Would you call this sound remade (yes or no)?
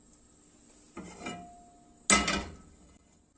no